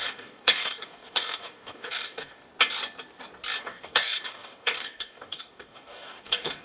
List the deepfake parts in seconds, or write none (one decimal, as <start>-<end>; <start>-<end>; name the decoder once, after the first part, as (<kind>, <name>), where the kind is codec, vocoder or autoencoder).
0.0-2.4 (codec, DAC); 3.6-6.6